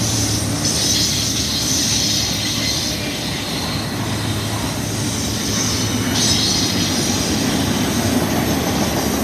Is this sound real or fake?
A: real